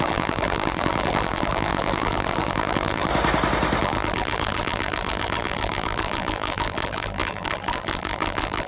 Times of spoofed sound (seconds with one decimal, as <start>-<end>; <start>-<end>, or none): 0.0-3.1; 3.8-8.7